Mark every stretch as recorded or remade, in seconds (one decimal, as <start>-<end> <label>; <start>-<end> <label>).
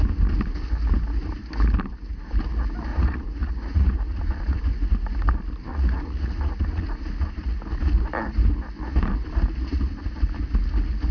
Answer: 0.0-2.9 recorded; 2.9-4.6 remade; 4.6-5.7 recorded; 5.7-7.0 remade; 7.0-11.1 recorded